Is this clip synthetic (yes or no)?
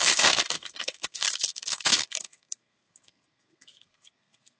yes